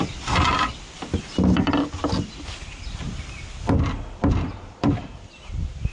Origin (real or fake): real